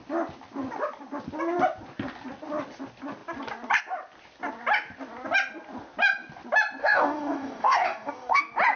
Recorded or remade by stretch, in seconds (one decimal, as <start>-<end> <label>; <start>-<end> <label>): 0.0-6.8 recorded; 6.8-8.4 remade; 8.4-8.8 recorded